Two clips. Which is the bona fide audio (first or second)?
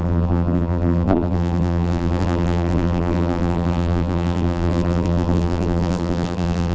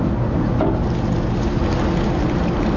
second